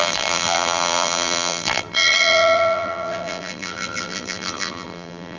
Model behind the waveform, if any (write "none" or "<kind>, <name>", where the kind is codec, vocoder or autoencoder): vocoder, BigVGAN v2